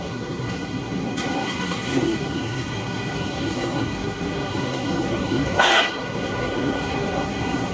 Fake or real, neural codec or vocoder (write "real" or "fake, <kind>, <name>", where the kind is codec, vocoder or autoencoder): fake, codec, SNAC